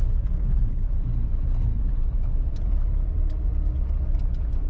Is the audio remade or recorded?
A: remade